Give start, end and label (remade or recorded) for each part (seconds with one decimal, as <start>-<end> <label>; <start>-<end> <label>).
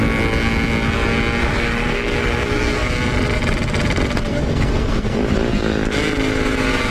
0.0-1.4 recorded; 1.4-2.9 remade; 2.9-4.3 recorded; 4.3-5.2 remade; 5.2-6.9 recorded